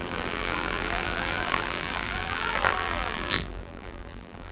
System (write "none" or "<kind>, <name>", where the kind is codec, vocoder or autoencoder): vocoder, BigVGAN v2